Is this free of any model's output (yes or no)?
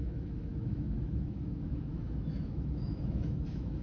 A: no